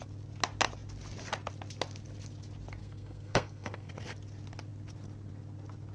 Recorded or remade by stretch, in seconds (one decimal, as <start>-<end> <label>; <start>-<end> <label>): 0.0-2.8 recorded; 2.8-3.9 remade; 3.9-5.9 recorded